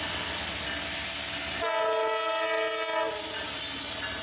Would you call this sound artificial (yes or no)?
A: no